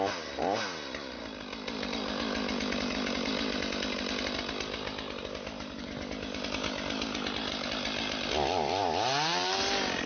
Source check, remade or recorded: recorded